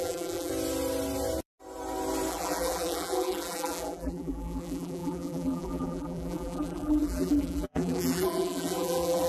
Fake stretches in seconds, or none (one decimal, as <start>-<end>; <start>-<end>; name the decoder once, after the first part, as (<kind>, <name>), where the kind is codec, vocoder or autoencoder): 0.0-0.5 (vocoder, BigVGAN v2); 2.3-9.3